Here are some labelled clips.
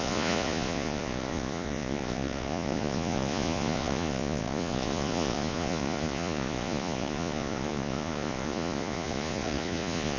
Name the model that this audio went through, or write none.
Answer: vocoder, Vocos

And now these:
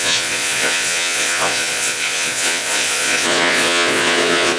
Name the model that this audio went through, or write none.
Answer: vocoder, Vocos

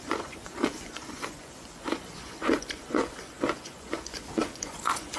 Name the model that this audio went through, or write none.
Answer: vocoder, Vocos